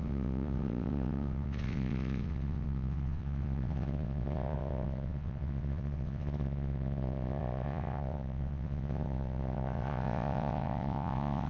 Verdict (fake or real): fake